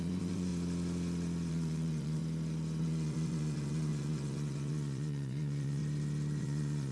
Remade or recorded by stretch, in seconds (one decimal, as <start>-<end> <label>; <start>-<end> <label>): 0.0-0.5 remade; 0.5-1.5 recorded; 1.5-2.2 remade; 2.2-2.8 recorded; 2.8-5.8 remade; 5.8-6.4 recorded; 6.4-6.9 remade